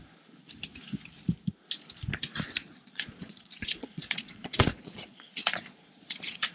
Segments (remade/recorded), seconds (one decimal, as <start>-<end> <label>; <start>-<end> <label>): 0.0-2.6 recorded; 2.6-6.5 remade